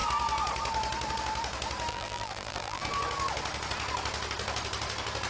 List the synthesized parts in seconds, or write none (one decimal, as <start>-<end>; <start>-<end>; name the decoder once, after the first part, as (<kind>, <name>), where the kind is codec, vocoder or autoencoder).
1.9-2.8 (vocoder, BigVGAN v2)